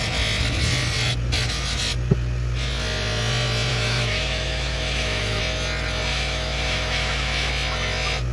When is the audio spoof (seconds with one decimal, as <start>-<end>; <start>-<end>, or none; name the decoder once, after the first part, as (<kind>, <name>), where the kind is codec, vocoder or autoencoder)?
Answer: 3.7-5.4 (autoencoder, DAC-VAE); 6.1-7.5